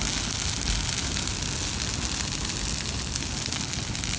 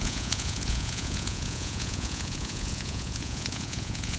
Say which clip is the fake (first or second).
second